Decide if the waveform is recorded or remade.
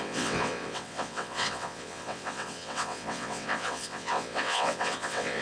remade